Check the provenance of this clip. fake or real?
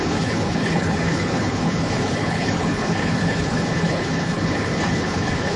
fake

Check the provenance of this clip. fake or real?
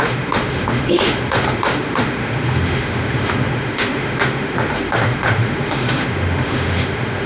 fake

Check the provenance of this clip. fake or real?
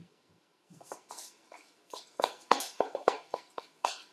fake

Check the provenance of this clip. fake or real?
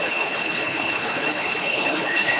fake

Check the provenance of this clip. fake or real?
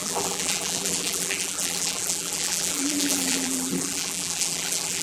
fake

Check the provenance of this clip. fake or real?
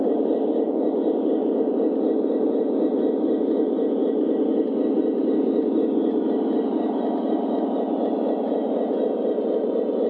real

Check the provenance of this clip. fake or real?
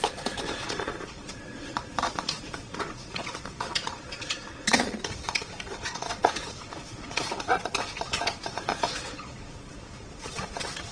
fake